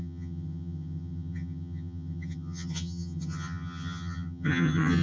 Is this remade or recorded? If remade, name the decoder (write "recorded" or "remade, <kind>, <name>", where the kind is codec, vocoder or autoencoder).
remade, vocoder, HiFi-GAN